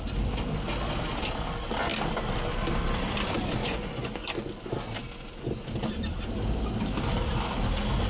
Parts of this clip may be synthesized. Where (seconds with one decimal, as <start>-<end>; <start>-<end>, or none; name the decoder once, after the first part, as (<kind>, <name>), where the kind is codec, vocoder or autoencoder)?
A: 3.6-4.3 (vocoder, Vocos)